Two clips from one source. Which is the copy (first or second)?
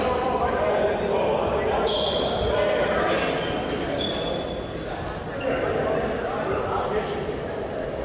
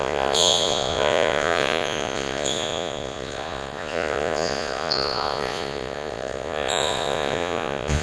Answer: second